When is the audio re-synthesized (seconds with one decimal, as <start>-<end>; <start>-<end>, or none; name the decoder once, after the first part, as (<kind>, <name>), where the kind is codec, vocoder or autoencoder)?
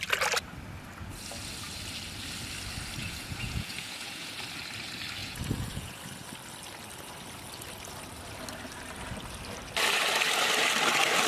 3.0-4.4 (vocoder, Vocos); 5.2-6.0